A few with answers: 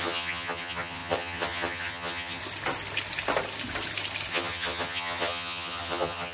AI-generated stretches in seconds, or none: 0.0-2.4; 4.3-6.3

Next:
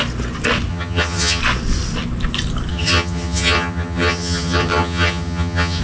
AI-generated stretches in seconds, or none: 0.7-1.4; 2.7-5.8